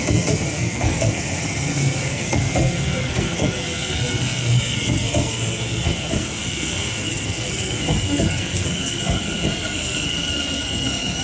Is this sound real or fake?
fake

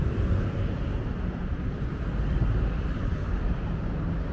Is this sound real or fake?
real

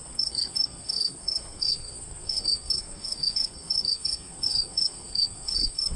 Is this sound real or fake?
fake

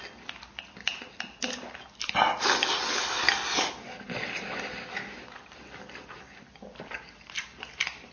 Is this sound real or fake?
real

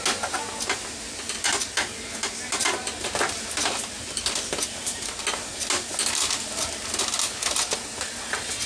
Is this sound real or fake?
real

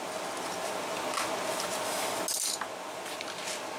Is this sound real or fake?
real